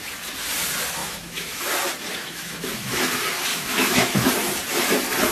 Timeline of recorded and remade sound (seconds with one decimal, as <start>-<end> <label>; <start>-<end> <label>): 0.0-1.0 recorded; 1.0-1.6 remade; 1.6-2.2 recorded; 2.2-3.0 remade; 3.0-3.5 recorded; 3.5-4.3 remade; 4.3-5.3 recorded